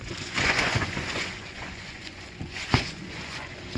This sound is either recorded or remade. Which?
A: remade